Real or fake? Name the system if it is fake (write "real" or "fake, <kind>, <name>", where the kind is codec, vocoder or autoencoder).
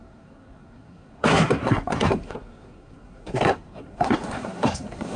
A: fake, codec, SNAC